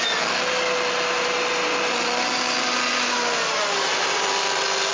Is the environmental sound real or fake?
real